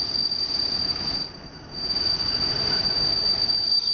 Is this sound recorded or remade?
recorded